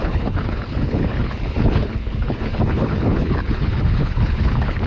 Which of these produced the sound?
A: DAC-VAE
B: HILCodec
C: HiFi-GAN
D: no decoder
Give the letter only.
B